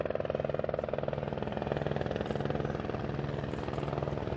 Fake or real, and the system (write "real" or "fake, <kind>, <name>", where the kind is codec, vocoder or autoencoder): real